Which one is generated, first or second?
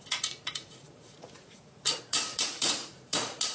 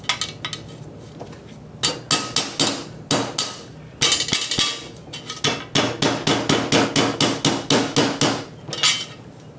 first